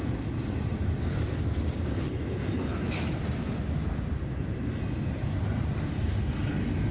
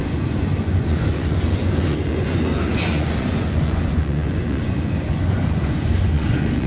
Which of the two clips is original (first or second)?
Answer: first